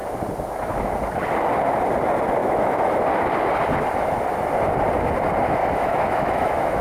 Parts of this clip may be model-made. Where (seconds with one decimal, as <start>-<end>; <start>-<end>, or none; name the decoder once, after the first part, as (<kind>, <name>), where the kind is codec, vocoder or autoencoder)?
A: 2.4-3.0 (autoencoder, DAC-VAE); 5.6-6.8